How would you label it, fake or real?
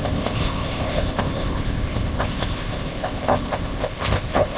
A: fake